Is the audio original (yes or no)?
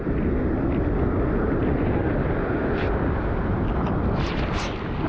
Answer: yes